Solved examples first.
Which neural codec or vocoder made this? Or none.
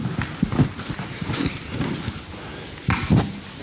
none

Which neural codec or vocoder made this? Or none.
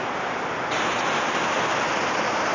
none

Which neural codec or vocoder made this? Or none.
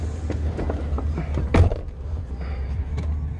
none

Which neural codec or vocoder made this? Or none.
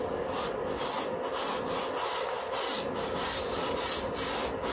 none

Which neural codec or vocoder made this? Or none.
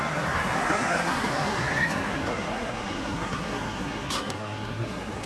codec, SNAC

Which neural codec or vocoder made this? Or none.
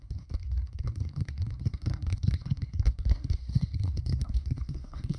codec, SNAC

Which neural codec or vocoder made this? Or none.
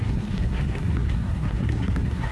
codec, SNAC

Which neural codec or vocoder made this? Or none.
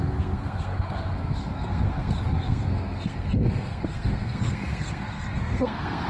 codec, SNAC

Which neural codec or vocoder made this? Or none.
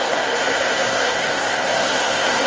codec, SNAC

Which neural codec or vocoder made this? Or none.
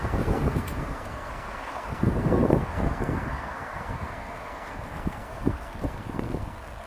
codec, SNAC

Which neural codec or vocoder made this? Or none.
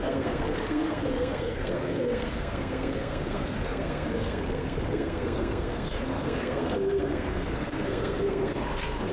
codec, SNAC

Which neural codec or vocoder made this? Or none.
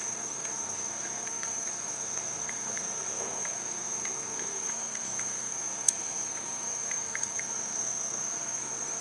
codec, SNAC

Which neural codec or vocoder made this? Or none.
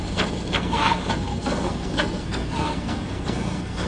codec, SNAC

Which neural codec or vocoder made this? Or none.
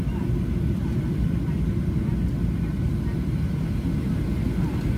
none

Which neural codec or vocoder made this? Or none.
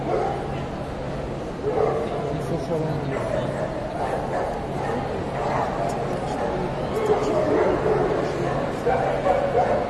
none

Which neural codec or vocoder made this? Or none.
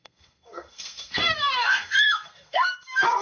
codec, SNAC